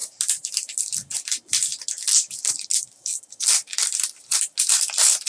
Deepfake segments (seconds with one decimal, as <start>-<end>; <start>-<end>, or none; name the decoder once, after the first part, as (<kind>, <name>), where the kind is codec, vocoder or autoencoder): none